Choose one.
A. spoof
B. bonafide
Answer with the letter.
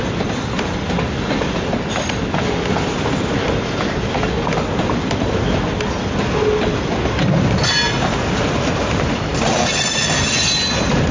B